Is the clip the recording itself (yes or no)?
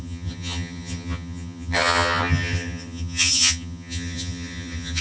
no